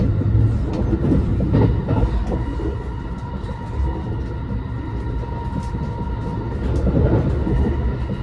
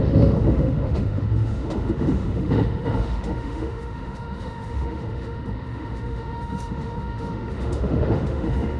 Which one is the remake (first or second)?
second